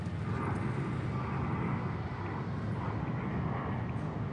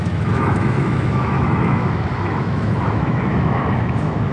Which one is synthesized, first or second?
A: second